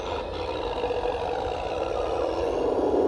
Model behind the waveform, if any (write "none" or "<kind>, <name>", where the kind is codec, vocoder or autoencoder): none